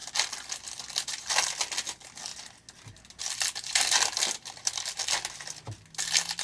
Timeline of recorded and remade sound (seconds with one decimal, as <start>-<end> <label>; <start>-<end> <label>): 0.0-6.4 recorded